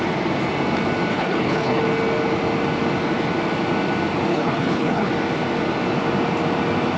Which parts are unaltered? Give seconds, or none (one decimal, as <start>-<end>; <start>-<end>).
0.0-1.1; 1.8-4.3; 5.1-7.0